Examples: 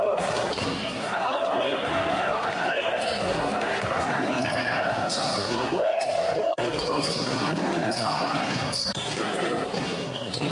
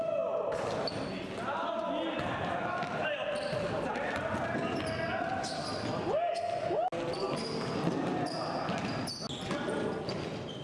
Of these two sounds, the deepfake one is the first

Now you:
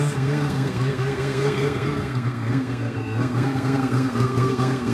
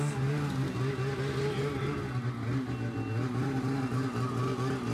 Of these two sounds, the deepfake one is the first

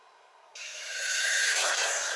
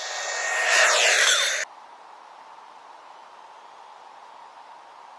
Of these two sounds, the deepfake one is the first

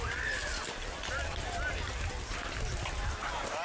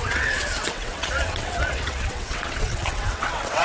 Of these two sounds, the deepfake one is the second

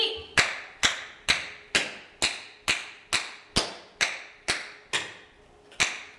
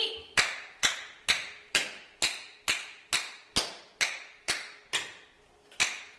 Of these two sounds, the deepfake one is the second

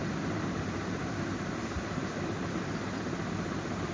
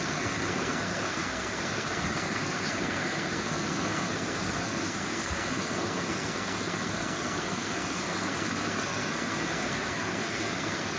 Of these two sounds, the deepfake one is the second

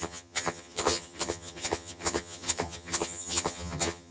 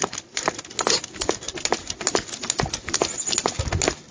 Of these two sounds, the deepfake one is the first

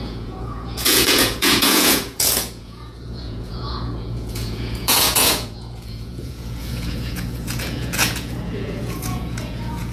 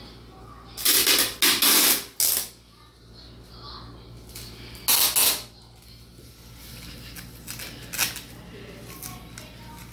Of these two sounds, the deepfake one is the first